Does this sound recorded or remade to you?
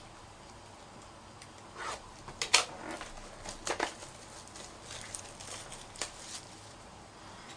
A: recorded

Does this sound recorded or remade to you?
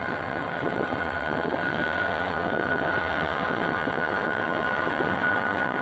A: remade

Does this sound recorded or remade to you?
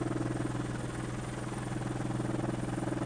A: recorded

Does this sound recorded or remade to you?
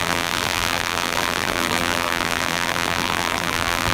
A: remade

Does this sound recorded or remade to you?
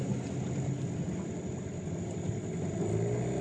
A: recorded